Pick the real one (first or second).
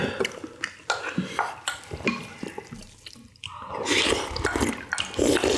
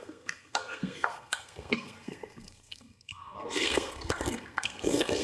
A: first